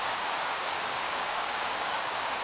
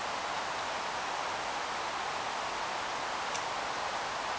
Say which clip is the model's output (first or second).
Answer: first